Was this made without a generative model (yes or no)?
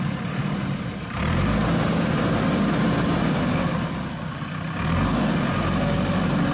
yes